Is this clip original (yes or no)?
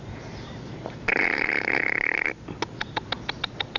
yes